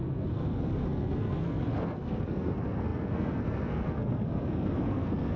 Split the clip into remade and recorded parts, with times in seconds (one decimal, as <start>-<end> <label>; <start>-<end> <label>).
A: 0.0-5.4 remade